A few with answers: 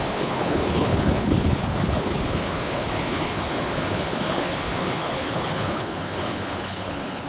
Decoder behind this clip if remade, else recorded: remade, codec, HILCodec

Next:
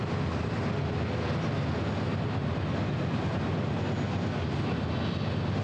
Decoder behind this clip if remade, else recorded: recorded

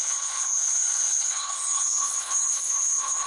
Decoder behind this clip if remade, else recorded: remade, codec, HILCodec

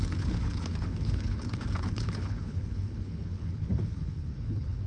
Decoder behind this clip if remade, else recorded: remade, codec, HILCodec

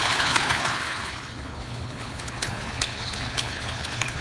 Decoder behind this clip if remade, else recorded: remade, codec, HILCodec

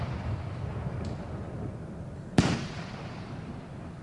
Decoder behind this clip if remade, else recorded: recorded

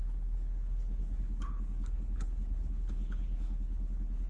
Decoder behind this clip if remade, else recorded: remade, codec, HILCodec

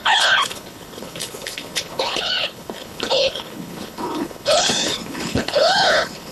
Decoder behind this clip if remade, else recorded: remade, codec, HILCodec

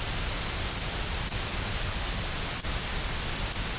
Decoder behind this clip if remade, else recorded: recorded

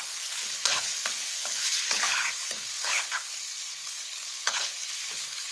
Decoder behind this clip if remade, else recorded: remade, codec, HILCodec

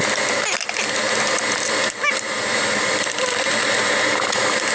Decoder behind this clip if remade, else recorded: recorded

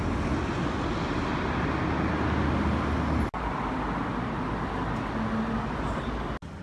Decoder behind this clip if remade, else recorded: recorded